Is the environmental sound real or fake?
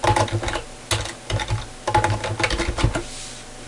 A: real